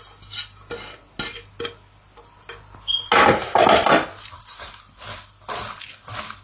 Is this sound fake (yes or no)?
no